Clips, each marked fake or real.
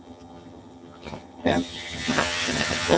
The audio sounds fake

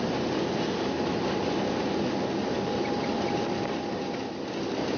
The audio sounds real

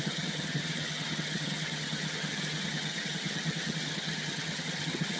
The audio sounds fake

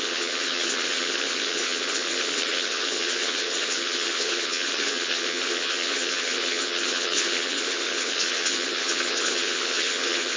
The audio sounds fake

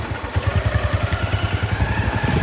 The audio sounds real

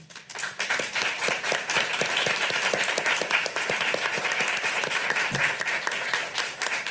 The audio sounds real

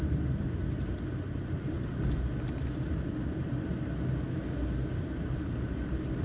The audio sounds real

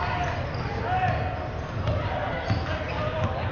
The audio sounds real